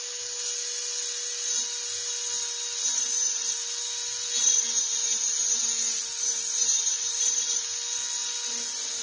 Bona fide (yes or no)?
yes